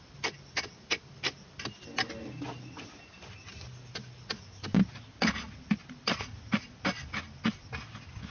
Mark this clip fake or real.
real